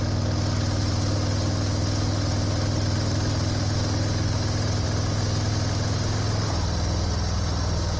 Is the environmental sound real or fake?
real